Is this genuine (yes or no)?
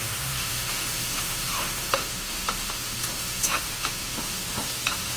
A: no